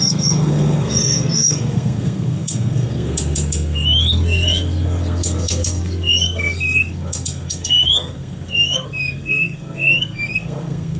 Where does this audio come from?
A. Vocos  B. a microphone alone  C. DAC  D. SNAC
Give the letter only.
D